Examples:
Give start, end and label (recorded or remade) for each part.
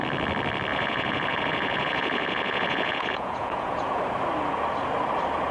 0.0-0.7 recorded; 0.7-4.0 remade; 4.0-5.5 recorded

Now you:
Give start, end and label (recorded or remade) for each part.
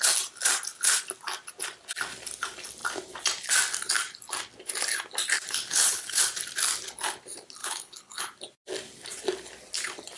0.0-5.7 recorded; 5.7-6.3 remade; 6.3-7.6 recorded; 7.6-8.2 remade; 8.2-10.2 recorded